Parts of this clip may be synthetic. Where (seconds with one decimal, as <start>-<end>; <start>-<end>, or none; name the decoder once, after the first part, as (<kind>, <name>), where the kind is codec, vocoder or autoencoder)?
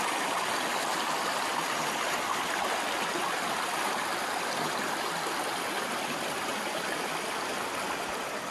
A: none